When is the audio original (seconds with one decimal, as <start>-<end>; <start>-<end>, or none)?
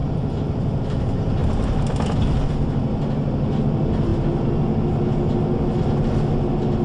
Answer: 0.0-6.8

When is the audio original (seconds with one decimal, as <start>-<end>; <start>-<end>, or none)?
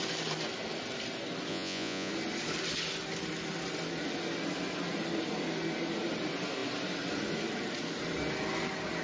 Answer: 0.0-1.5; 2.1-9.0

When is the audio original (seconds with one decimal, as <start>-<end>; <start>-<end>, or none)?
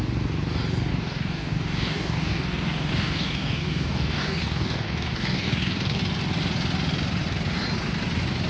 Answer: 0.0-0.9; 6.0-8.5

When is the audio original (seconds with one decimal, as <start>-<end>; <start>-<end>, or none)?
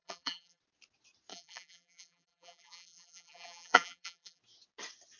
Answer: 0.6-1.3; 4.4-5.2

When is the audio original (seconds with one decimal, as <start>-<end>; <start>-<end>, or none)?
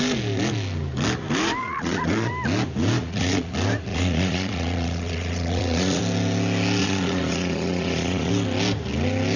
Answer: 0.0-1.6; 2.3-3.0; 3.5-3.9; 6.0-6.8; 8.3-9.4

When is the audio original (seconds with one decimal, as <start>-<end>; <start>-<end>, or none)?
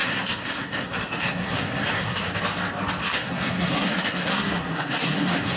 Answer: 2.3-3.0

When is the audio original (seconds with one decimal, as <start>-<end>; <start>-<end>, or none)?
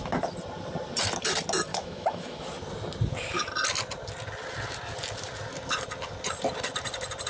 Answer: 0.0-1.7; 2.4-7.3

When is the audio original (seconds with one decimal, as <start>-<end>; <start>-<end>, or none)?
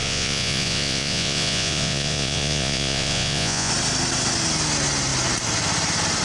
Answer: 3.7-6.2